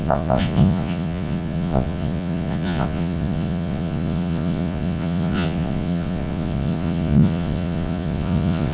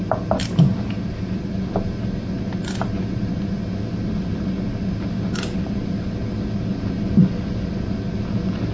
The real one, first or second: second